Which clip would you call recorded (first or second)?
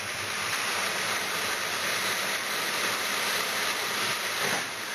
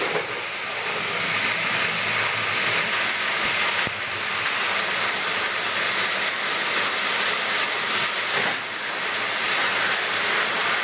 second